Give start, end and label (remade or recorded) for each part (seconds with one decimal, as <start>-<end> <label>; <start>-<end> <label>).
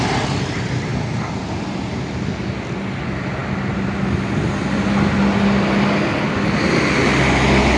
0.0-0.9 recorded; 0.9-1.6 remade; 1.6-7.8 recorded